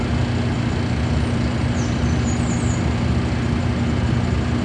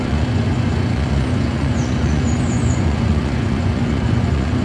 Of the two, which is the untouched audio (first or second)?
first